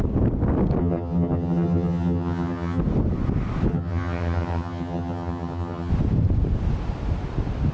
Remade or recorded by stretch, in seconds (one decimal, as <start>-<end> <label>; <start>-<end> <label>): 0.0-0.8 recorded; 0.8-2.8 remade; 2.8-3.7 recorded; 3.7-5.9 remade; 5.9-7.7 recorded